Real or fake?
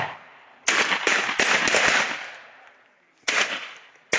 real